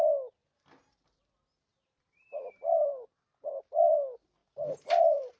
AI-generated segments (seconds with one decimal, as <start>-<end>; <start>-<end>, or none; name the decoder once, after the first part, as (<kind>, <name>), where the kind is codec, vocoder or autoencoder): 1.7-3.5 (vocoder, BigVGAN v2); 4.4-5.4